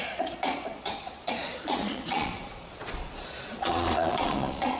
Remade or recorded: remade